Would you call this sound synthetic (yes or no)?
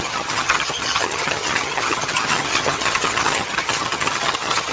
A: yes